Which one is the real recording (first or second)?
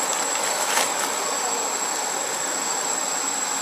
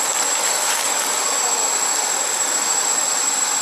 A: first